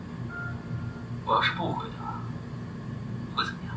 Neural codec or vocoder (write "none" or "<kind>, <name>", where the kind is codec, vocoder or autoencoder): none